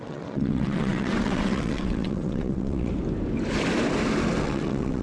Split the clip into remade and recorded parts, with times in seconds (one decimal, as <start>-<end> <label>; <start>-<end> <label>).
0.0-2.9 remade; 2.9-4.4 recorded; 4.4-5.0 remade